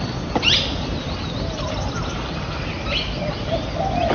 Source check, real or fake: real